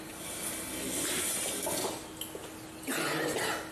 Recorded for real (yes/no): yes